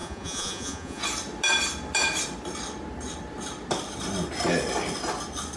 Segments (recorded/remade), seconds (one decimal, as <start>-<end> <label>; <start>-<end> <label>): 0.0-1.0 remade; 1.0-5.6 recorded